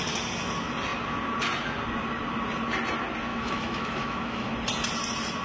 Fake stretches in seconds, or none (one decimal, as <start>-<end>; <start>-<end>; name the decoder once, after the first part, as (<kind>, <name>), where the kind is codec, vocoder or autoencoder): 3.3-4.5 (autoencoder, DAC-VAE)